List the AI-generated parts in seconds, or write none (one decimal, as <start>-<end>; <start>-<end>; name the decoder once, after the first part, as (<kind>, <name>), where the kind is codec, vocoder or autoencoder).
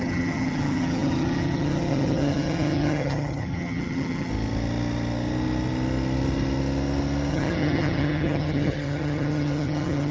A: 0.0-4.3 (vocoder, HiFi-GAN); 7.3-10.1